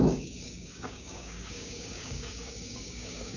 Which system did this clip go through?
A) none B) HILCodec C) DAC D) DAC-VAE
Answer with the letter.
C